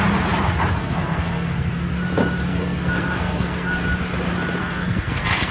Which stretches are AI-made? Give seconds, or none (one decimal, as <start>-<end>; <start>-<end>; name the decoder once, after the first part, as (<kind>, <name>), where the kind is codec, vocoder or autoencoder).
0.8-1.7 (codec, SNAC); 2.5-3.8; 4.6-5.5